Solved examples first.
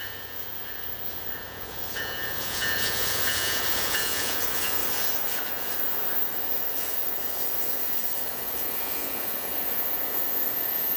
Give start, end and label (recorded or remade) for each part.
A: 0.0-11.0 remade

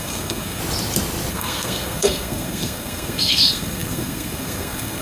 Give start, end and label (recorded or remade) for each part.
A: 0.0-0.6 remade; 0.6-1.3 recorded; 1.3-5.0 remade

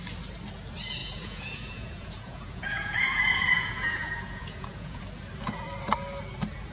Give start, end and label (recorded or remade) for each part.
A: 0.0-1.0 recorded; 1.0-5.0 remade; 5.0-6.7 recorded